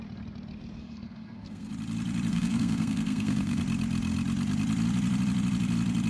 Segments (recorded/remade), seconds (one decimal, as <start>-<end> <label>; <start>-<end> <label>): 0.0-0.8 recorded; 0.8-1.7 remade; 1.7-2.3 recorded; 2.3-3.6 remade; 3.6-6.1 recorded